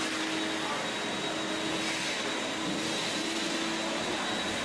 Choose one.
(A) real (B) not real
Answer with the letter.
A